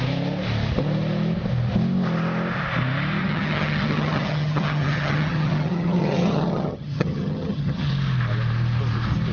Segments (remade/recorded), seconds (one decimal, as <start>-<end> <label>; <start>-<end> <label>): 0.0-3.2 recorded; 3.2-7.9 remade; 7.9-9.3 recorded